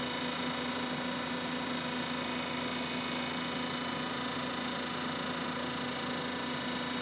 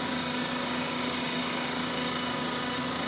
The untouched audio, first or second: first